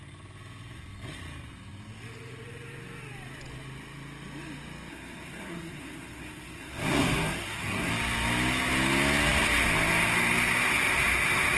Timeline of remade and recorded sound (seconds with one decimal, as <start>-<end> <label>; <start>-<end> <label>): 0.0-4.9 recorded; 4.9-7.9 remade; 7.9-11.6 recorded